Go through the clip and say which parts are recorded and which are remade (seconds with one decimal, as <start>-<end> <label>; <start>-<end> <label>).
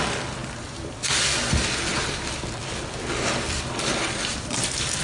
0.0-0.4 recorded; 0.4-1.2 remade; 1.2-1.9 recorded; 1.9-5.0 remade